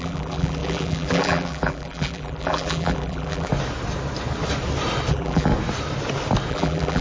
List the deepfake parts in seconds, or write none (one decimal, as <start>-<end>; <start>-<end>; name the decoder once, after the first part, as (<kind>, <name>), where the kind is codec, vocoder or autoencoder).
0.0-3.5 (vocoder, BigVGAN v2); 5.1-5.5; 6.5-7.0

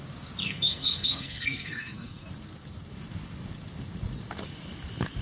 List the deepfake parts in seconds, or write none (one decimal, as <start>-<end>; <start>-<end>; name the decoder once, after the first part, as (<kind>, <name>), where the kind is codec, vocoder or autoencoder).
0.4-2.3 (codec, SNAC)

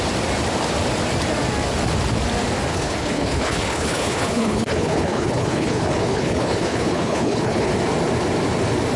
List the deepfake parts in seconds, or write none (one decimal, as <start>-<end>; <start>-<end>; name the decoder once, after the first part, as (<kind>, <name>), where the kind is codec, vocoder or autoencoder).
2.7-7.7 (codec, HILCodec)

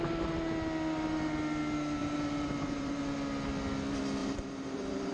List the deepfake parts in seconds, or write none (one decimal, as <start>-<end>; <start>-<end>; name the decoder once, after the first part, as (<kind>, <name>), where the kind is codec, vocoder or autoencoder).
2.0-3.0 (vocoder, BigVGAN v2); 4.2-5.1

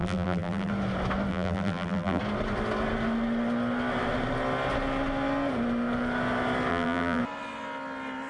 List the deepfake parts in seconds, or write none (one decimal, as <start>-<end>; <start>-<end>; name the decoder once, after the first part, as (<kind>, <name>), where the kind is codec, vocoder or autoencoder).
0.0-0.7 (vocoder, BigVGAN v2); 1.3-2.2; 6.7-7.2

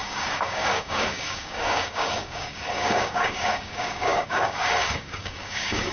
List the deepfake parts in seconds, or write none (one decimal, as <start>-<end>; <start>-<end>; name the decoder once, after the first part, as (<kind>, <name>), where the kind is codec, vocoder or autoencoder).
0.0-5.9 (codec, DAC)